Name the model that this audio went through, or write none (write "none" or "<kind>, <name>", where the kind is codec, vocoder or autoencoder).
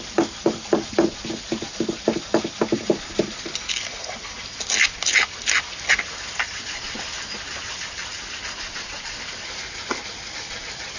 none